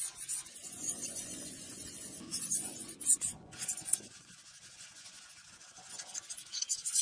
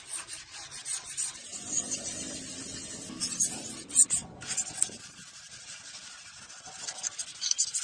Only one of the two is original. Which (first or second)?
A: second